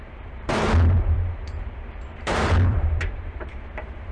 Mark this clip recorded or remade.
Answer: remade